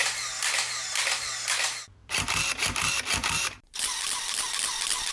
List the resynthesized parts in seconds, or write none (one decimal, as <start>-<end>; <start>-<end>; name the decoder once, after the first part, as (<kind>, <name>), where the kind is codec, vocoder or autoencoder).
2.0-4.5 (vocoder, BigVGAN v2)